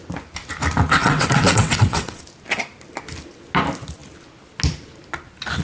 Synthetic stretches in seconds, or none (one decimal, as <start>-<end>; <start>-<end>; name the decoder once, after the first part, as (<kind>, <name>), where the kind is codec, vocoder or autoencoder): 1.0-2.2 (vocoder, WaveNeXt)